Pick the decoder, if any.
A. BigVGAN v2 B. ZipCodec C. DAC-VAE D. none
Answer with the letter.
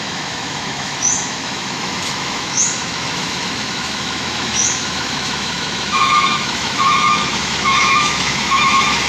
C